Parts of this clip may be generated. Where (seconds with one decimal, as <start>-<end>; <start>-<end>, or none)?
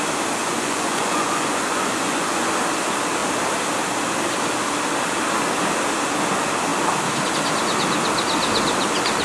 0.4-2.6